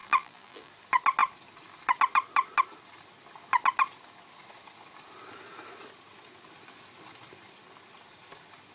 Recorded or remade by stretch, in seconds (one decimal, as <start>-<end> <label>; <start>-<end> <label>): 0.0-0.7 remade; 0.7-8.7 recorded